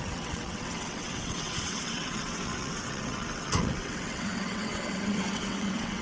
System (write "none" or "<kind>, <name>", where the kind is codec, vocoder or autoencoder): vocoder, WaveNeXt